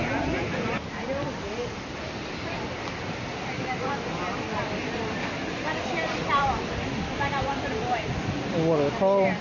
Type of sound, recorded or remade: recorded